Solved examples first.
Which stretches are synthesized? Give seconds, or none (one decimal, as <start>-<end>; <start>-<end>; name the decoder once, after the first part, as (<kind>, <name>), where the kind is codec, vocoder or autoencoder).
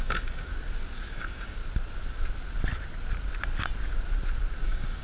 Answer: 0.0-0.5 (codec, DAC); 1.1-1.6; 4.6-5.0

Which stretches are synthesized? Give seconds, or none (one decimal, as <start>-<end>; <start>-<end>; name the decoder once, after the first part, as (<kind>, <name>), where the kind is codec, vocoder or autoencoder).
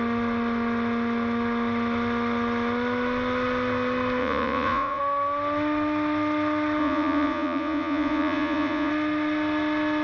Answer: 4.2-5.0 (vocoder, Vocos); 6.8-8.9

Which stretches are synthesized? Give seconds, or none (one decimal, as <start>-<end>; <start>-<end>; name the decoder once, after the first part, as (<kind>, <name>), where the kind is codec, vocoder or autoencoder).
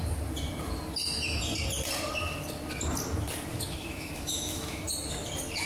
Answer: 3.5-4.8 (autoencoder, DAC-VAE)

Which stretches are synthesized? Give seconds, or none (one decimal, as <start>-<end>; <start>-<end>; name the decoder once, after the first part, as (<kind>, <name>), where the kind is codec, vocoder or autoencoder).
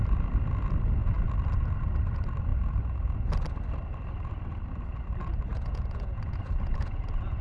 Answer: 5.5-7.4 (vocoder, Vocos)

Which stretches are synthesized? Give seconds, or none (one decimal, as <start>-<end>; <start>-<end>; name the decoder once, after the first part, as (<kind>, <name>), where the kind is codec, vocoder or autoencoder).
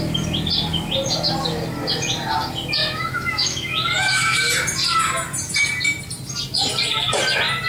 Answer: 2.8-4.5 (autoencoder, DAC-VAE)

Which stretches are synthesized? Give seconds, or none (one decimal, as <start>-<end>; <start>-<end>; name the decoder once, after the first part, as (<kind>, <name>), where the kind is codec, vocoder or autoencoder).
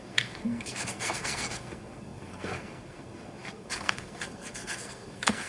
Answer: 0.0-5.5 (codec, SNAC)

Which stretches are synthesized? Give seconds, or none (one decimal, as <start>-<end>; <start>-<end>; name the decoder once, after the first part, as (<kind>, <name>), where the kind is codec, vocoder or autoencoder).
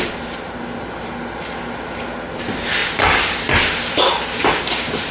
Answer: none